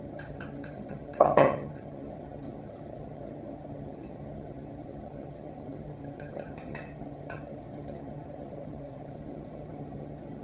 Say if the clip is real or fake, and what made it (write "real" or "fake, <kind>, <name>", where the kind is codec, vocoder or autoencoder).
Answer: fake, vocoder, HiFi-GAN